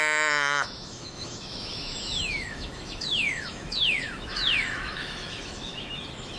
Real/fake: fake